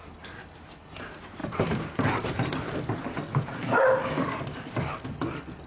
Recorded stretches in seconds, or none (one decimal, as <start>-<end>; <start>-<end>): 0.0-5.7